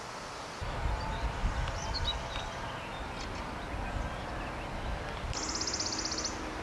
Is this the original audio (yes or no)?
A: yes